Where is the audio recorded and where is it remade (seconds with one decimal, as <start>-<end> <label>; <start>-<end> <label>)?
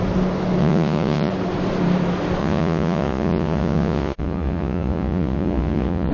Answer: 0.0-0.6 recorded; 0.6-1.3 remade; 1.3-2.4 recorded; 2.4-6.1 remade